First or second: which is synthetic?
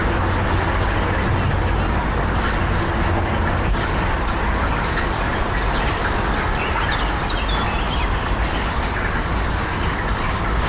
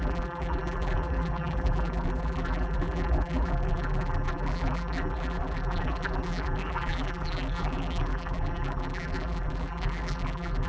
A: second